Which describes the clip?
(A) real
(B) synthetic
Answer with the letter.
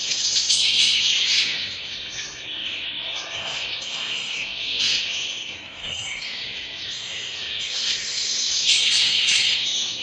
B